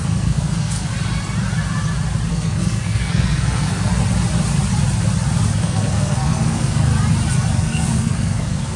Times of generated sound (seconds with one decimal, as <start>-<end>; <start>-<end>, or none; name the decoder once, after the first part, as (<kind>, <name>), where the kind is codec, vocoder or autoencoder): 0.0-0.9 (codec, SNAC); 2.3-3.9; 5.6-6.9; 7.6-8.8